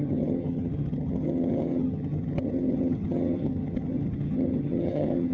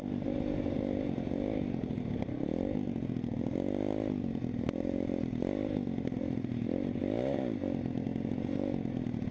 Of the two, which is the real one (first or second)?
second